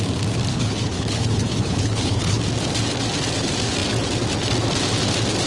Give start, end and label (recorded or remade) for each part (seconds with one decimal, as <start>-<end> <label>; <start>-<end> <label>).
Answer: 0.0-0.5 recorded; 0.5-2.4 remade; 2.4-5.5 recorded